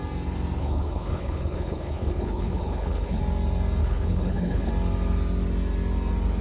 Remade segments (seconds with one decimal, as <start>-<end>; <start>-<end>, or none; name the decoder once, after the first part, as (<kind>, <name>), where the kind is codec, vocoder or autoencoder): 0.6-3.2 (codec, HILCodec); 3.8-4.7